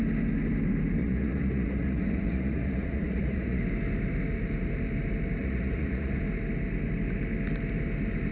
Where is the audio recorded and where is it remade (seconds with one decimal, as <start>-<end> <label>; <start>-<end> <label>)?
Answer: 0.0-1.0 recorded; 1.0-3.6 remade; 3.6-5.4 recorded; 5.4-6.2 remade; 6.2-8.3 recorded